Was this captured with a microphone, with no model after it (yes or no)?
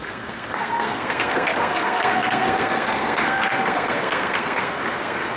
no